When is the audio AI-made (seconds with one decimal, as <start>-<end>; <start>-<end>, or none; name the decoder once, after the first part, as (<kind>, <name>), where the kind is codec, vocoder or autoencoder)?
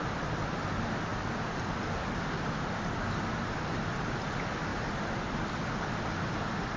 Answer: 0.0-0.7 (vocoder, BigVGAN v2); 4.7-5.5